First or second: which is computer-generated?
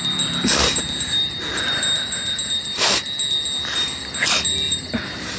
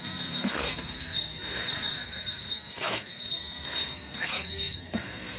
second